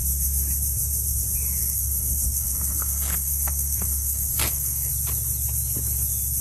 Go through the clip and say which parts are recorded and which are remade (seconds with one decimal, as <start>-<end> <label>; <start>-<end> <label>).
0.0-1.6 recorded; 1.6-4.9 remade; 4.9-6.4 recorded